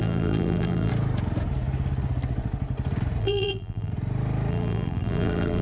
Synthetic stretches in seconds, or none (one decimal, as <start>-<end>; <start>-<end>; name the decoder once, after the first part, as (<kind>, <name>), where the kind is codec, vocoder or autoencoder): 0.0-0.9 (vocoder, BigVGAN v2); 3.2-3.9; 4.5-5.6